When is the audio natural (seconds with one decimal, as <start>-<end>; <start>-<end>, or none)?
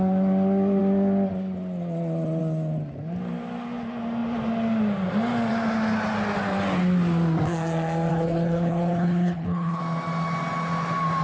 0.0-8.1; 9.8-11.2